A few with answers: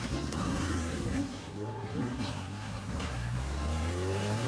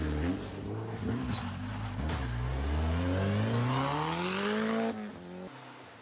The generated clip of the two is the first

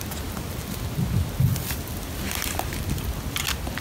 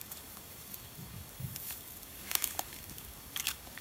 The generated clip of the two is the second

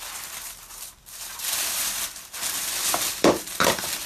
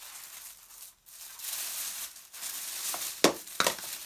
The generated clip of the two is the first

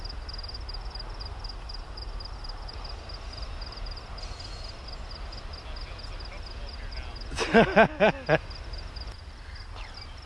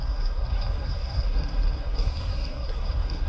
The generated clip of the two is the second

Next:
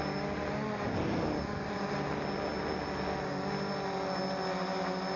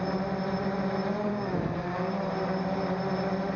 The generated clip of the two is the second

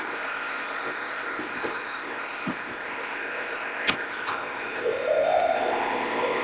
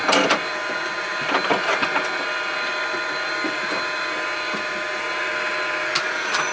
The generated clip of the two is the first